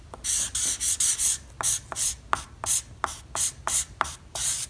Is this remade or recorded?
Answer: recorded